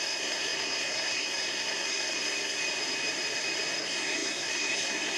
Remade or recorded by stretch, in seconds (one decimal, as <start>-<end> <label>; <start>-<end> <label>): 0.0-2.6 remade; 2.6-3.8 recorded; 3.8-5.2 remade